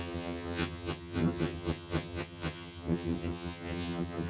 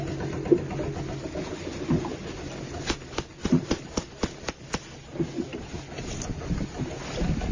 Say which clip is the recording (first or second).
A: second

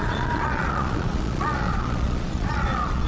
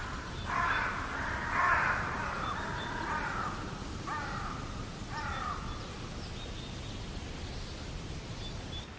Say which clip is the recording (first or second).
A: second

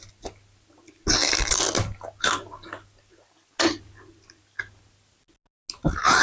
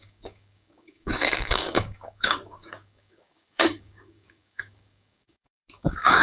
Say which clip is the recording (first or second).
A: first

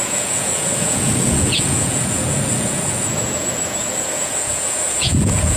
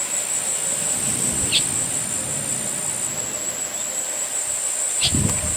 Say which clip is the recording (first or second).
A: second